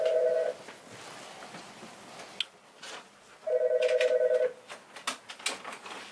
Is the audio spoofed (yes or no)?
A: no